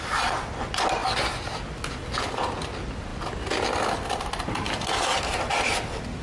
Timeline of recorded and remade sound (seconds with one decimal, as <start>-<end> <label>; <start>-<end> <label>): 0.0-6.2 recorded